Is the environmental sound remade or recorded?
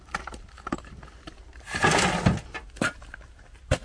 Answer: recorded